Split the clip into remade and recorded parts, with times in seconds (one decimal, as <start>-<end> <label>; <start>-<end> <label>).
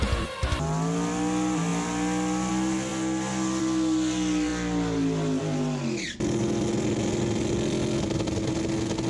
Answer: 0.0-9.1 recorded